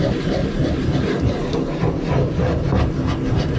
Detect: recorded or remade recorded